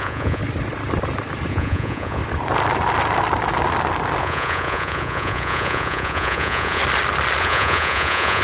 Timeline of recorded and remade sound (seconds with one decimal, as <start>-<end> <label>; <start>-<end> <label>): 0.0-0.4 remade; 0.4-1.5 recorded; 1.5-2.2 remade; 2.2-4.2 recorded; 4.2-6.8 remade; 6.8-7.4 recorded; 7.4-8.4 remade